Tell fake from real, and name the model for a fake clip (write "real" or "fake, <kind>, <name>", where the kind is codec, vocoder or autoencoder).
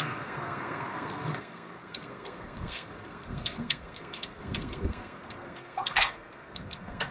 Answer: fake, codec, SNAC